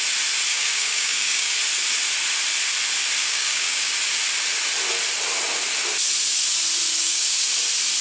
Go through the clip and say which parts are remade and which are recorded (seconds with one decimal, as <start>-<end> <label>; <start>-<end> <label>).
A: 0.0-0.5 recorded; 0.5-1.6 remade; 1.6-3.2 recorded; 3.2-3.9 remade; 3.9-6.9 recorded; 6.9-7.5 remade; 7.5-8.0 recorded